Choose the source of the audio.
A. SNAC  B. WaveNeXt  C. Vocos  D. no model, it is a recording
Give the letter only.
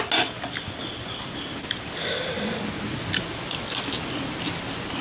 D